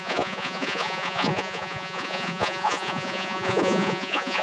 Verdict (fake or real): fake